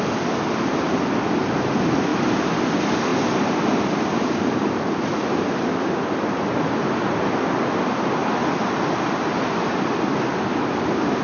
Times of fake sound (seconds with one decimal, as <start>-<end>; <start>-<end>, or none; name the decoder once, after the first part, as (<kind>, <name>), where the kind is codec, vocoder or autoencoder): none